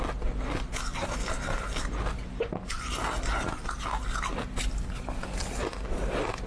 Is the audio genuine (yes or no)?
yes